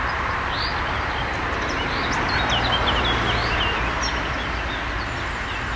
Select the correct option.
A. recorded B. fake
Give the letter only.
A